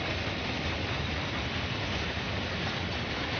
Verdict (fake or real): real